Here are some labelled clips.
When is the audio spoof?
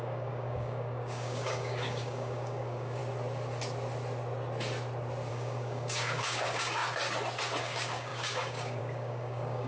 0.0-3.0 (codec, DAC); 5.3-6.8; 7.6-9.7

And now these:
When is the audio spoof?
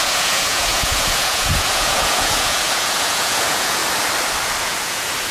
0.0-3.8 (vocoder, Vocos); 4.6-5.3